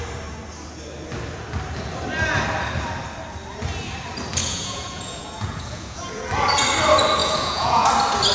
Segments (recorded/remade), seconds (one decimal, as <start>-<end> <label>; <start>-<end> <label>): 0.0-4.4 recorded; 4.4-6.0 remade; 6.0-7.2 recorded; 7.2-7.9 remade; 7.9-8.3 recorded